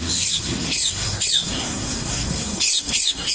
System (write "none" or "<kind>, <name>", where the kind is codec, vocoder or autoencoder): codec, SNAC